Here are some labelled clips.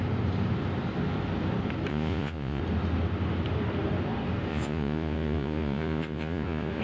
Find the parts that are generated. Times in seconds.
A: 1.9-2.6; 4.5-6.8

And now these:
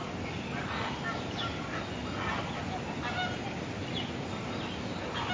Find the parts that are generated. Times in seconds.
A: none

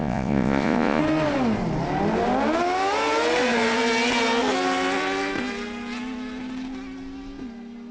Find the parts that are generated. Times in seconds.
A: 0.0-1.0